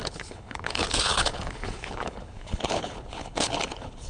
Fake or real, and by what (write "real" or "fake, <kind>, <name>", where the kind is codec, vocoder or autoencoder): fake, codec, HILCodec